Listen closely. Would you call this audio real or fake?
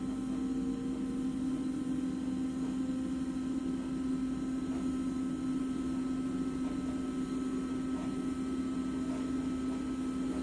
real